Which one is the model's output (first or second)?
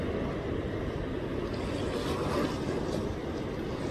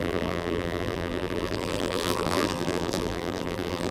second